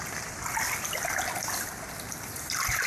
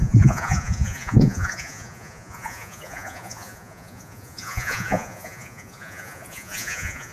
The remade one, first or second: second